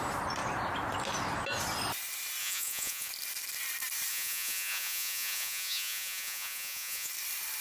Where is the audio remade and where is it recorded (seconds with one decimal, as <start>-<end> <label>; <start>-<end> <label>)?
0.0-2.4 recorded; 2.4-3.1 remade; 3.1-4.1 recorded; 4.1-7.1 remade; 7.1-7.6 recorded